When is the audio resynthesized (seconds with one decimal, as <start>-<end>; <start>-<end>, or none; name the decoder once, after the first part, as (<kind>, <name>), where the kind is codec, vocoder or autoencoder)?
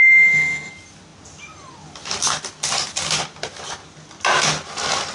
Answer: 0.0-0.7 (codec, SNAC)